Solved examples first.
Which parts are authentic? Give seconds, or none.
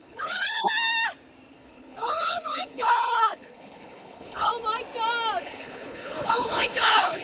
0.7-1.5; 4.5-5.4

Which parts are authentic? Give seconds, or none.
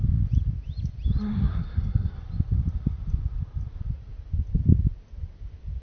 0.0-1.3; 2.2-5.8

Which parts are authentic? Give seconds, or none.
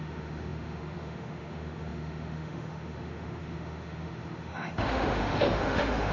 none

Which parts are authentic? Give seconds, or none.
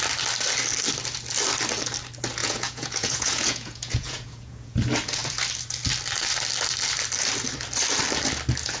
0.0-2.4; 4.8-8.8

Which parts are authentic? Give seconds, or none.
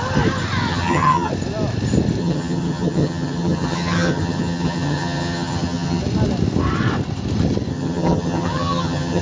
0.0-0.7; 1.3-2.2; 6.0-7.7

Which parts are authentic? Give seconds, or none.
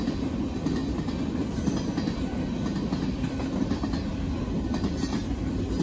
0.0-5.8